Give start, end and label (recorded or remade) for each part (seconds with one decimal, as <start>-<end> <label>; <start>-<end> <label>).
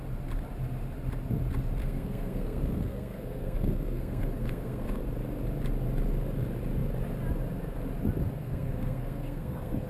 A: 0.0-1.8 recorded; 1.8-5.0 remade; 5.0-8.4 recorded; 8.4-9.9 remade